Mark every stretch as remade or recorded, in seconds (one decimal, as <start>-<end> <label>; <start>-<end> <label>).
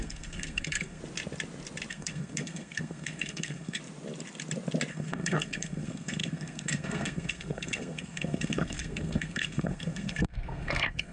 0.0-1.0 remade; 1.0-1.9 recorded; 1.9-3.8 remade; 3.8-4.9 recorded; 4.9-11.1 remade